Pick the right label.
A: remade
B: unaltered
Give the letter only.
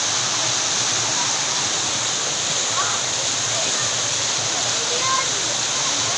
B